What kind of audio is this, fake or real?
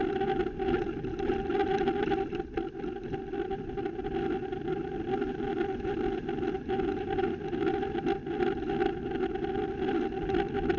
real